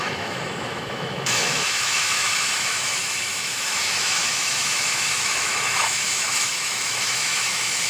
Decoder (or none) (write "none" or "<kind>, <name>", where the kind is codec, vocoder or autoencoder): autoencoder, DAC-VAE